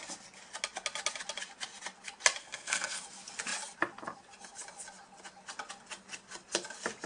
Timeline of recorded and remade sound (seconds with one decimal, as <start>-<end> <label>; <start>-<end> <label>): 0.0-2.4 recorded; 2.4-3.0 remade; 3.0-7.1 recorded